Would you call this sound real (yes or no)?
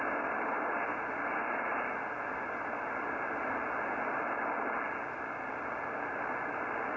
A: yes